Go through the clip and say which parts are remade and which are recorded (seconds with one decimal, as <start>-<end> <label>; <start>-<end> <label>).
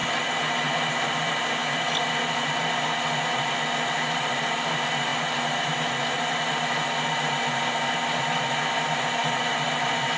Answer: 0.0-10.2 recorded